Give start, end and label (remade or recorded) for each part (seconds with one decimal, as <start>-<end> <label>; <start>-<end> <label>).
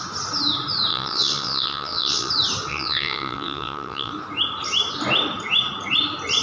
0.0-0.9 recorded; 0.9-2.3 remade; 2.3-2.7 recorded; 2.7-4.1 remade; 4.1-6.4 recorded